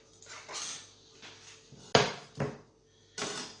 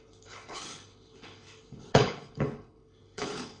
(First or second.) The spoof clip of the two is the second